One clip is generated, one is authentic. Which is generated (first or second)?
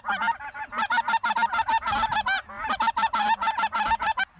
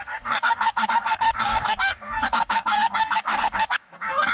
second